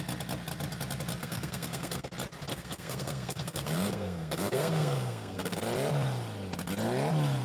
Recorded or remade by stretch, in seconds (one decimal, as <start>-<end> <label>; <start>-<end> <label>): 0.0-1.2 recorded; 1.2-2.1 remade; 2.1-2.5 recorded; 2.5-5.6 remade; 5.6-7.4 recorded

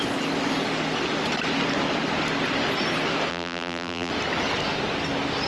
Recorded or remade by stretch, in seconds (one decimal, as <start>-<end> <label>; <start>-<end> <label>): 0.0-3.3 recorded; 3.3-4.1 remade; 4.1-5.5 recorded

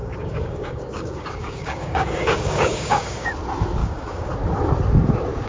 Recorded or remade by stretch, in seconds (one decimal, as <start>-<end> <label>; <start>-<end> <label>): 0.0-3.3 remade; 3.3-3.8 recorded; 3.8-4.3 remade; 4.3-5.5 recorded

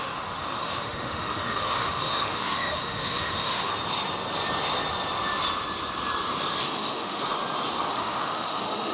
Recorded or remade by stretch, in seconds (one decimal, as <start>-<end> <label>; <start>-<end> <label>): 0.0-3.7 remade; 3.7-6.6 recorded; 6.6-7.2 remade; 7.2-7.9 recorded; 7.9-8.9 remade

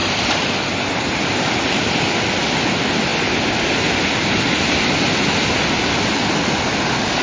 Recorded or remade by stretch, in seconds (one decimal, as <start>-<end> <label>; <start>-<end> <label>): 0.0-1.9 remade; 1.9-7.2 recorded

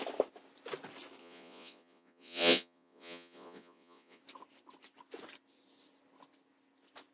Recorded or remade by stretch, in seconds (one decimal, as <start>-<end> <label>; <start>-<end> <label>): 0.0-1.2 recorded; 1.2-4.2 remade; 4.2-7.1 recorded